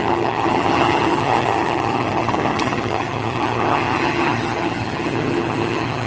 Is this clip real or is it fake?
fake